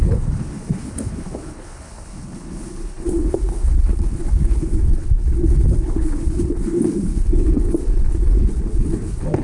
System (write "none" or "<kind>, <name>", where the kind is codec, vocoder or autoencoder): codec, HILCodec